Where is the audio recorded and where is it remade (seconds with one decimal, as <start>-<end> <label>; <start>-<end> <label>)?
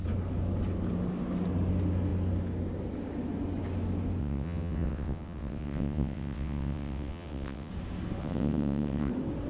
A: 0.0-4.2 recorded; 4.2-7.7 remade; 7.7-8.2 recorded; 8.2-9.1 remade; 9.1-9.5 recorded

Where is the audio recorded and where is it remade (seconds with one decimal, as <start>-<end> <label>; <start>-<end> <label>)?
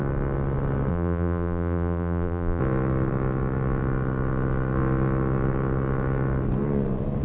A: 0.0-0.9 recorded; 0.9-2.6 remade; 2.6-7.2 recorded